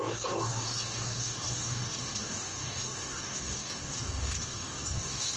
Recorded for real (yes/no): no